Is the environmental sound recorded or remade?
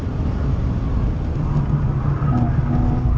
recorded